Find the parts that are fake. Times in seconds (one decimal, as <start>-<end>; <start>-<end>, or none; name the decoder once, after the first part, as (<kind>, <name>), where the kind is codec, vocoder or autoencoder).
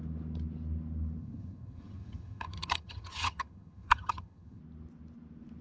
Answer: 1.2-4.6 (vocoder, HiFi-GAN)